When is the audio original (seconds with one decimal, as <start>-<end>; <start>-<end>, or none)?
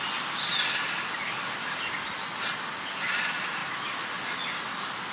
0.0-5.1